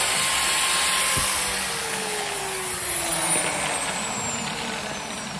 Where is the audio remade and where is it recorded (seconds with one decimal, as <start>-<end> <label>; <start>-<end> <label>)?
0.0-1.8 recorded; 1.8-2.4 remade; 2.4-5.4 recorded